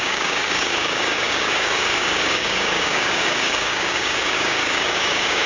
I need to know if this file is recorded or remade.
remade